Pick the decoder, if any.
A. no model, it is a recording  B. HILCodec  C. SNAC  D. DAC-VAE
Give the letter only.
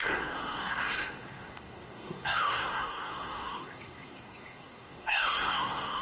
C